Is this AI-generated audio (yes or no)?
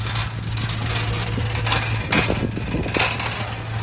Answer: no